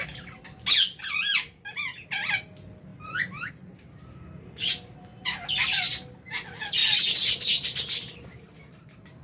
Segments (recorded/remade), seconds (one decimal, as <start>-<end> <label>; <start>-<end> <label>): 0.0-9.2 recorded